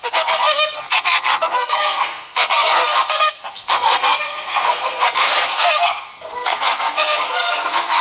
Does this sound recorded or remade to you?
remade